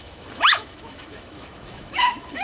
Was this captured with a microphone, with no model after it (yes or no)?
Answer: no